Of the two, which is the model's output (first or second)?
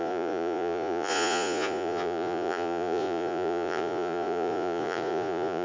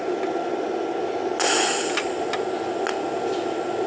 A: first